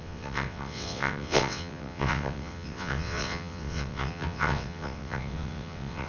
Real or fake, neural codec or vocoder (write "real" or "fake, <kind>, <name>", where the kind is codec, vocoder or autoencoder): fake, vocoder, WaveNeXt